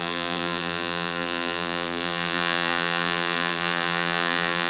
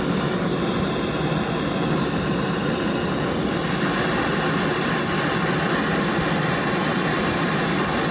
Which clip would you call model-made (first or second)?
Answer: first